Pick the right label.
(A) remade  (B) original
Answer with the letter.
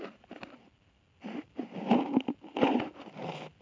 B